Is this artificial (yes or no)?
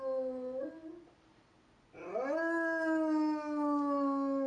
no